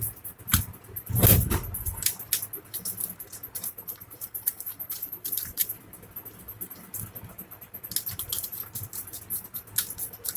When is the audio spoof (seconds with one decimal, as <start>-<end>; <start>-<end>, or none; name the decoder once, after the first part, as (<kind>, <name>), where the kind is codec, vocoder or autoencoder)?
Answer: 3.7-5.7 (vocoder, BigVGAN v2)